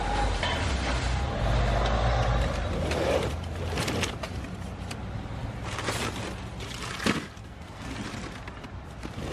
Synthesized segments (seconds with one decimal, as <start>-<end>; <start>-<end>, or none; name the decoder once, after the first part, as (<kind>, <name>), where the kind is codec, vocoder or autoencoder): 7.4-7.9 (codec, SNAC)

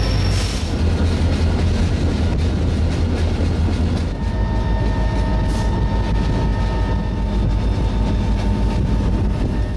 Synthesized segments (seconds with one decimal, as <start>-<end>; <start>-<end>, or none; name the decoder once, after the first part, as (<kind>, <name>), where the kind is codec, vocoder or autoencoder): none

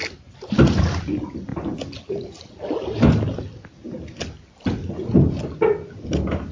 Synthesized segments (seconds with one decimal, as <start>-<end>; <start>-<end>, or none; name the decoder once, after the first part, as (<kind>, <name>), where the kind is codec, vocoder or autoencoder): none